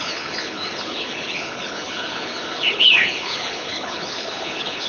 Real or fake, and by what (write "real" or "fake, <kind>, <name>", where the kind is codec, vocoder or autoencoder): fake, codec, HILCodec